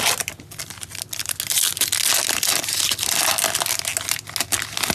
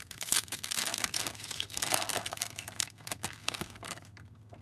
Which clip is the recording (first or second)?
first